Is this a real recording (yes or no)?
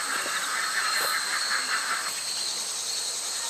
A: yes